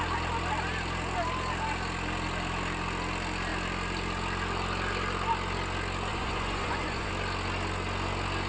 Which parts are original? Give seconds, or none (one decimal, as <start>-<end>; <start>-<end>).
0.0-6.1; 7.1-8.5